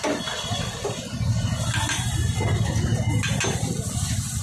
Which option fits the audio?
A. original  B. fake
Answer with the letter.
A